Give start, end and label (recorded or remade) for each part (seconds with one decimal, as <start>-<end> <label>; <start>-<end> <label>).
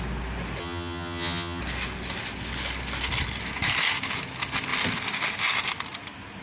0.0-0.6 recorded; 0.6-1.6 remade; 1.6-6.4 recorded